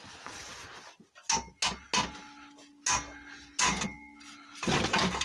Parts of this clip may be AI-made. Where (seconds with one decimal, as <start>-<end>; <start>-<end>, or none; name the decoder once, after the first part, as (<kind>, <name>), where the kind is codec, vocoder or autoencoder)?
0.0-0.5 (vocoder, BigVGAN v2); 3.6-5.2